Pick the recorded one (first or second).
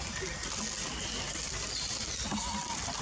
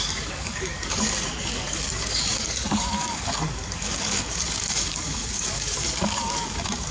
first